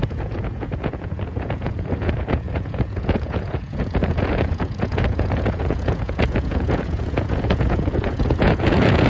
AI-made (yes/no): yes